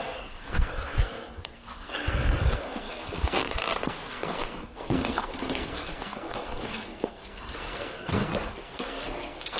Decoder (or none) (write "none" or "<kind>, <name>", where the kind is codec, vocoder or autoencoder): codec, SNAC